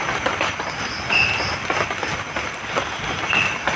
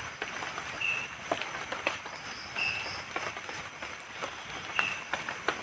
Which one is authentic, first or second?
first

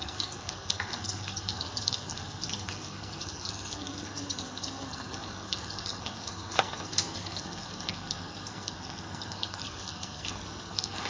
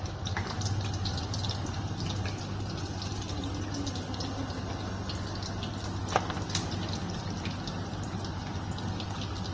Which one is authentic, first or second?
second